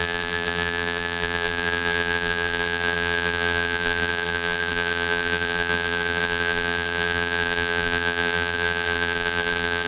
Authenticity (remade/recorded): remade